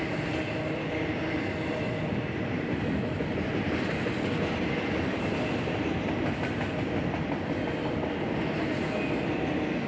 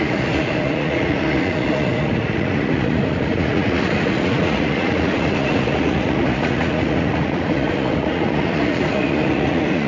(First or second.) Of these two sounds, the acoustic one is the first